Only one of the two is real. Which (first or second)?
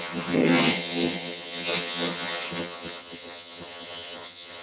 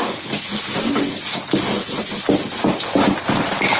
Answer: second